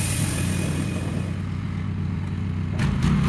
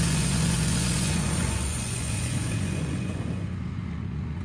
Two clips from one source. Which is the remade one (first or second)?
second